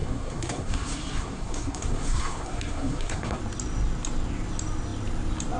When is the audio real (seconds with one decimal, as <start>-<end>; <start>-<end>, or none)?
3.4-5.6